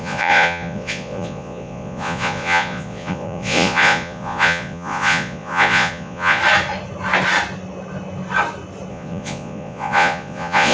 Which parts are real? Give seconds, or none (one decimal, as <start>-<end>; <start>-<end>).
6.4-8.9